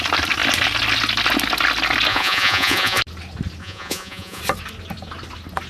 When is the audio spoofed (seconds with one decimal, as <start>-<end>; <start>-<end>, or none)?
2.1-3.0; 3.6-4.4

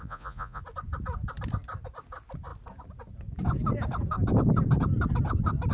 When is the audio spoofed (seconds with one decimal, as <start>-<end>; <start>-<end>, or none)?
0.0-0.6

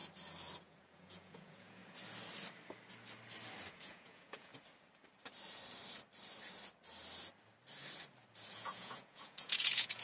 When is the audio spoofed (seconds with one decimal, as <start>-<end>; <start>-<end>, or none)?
0.6-1.8; 3.7-4.5; 8.5-10.0

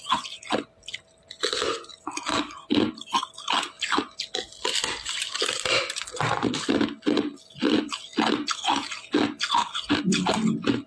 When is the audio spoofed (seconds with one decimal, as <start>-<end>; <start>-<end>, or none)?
none